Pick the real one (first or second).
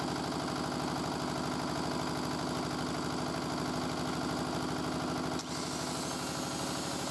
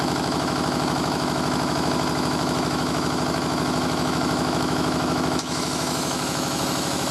first